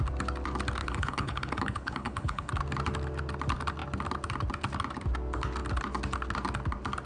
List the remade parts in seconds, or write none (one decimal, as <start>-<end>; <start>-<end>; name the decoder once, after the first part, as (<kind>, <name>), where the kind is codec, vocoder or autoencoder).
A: 0.8-2.5 (codec, HILCodec)